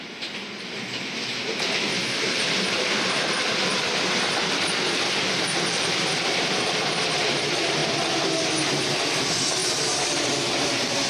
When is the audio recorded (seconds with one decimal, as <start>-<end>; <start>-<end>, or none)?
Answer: 0.0-1.9; 3.2-9.6; 10.2-11.1